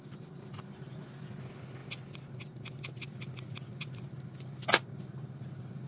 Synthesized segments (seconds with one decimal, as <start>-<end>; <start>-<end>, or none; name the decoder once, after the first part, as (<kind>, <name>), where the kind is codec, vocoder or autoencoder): none